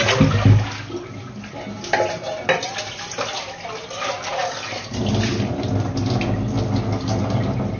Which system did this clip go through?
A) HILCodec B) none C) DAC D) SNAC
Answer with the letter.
B